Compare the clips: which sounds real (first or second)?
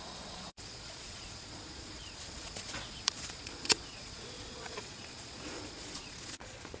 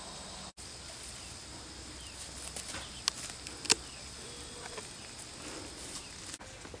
second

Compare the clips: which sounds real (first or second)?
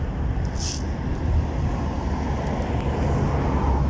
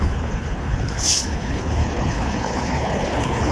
first